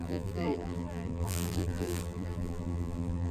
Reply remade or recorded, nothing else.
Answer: remade